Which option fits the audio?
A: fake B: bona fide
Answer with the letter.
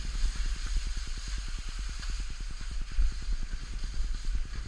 B